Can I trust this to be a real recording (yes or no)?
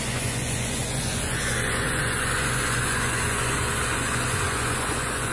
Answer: no